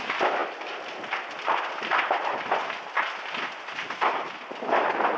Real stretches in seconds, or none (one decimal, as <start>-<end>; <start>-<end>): 0.0-5.2